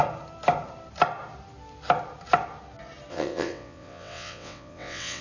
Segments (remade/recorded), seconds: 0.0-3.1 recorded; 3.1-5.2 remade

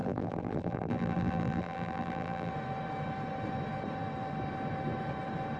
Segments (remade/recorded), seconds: 0.0-2.5 remade; 2.5-5.6 recorded

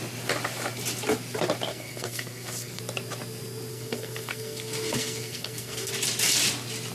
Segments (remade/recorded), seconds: 0.0-1.7 recorded; 1.7-2.8 remade; 2.8-3.7 recorded; 3.7-5.9 remade; 5.9-6.9 recorded

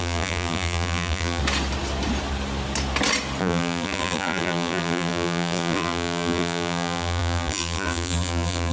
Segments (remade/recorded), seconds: 0.0-1.4 remade; 1.4-3.4 recorded; 3.4-8.7 remade

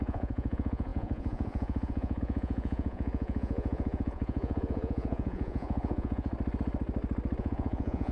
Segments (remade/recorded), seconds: 0.0-6.3 remade; 6.3-7.4 recorded; 7.4-8.1 remade